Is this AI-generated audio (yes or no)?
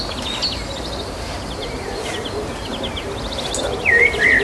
no